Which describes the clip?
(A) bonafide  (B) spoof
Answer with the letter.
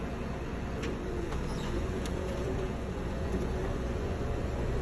B